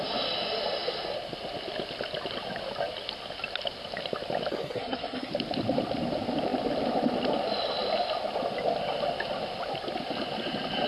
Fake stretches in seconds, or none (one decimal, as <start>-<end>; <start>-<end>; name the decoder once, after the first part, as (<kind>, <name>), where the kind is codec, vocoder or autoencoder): 4.5-5.3 (codec, SNAC)